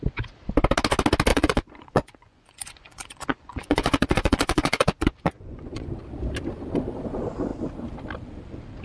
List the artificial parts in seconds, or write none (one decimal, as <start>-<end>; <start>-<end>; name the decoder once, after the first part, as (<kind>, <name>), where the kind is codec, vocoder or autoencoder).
1.3-5.9 (vocoder, Vocos)